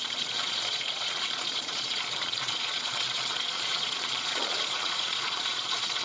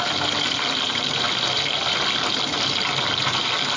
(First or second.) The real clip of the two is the second